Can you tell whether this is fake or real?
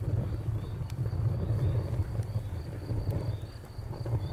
fake